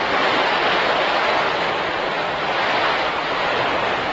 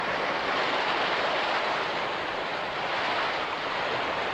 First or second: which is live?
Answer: first